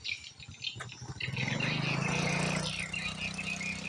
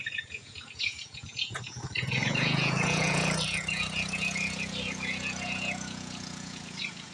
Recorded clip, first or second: first